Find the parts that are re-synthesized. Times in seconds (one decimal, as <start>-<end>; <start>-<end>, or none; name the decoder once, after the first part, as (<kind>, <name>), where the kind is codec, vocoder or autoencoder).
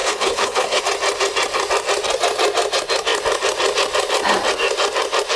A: 0.0-0.8 (codec, HILCodec)